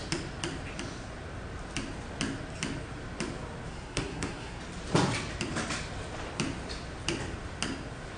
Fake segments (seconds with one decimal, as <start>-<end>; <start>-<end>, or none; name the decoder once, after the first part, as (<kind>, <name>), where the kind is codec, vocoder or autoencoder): 3.7-4.6 (codec, SNAC)